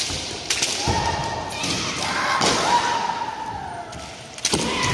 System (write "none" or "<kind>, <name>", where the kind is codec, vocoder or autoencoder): none